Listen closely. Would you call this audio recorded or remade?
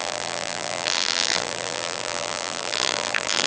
remade